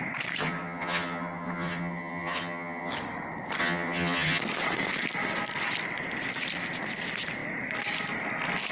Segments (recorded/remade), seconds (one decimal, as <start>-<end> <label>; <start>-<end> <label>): 0.0-0.4 recorded; 0.4-2.9 remade; 2.9-3.6 recorded; 3.6-4.4 remade; 4.4-8.7 recorded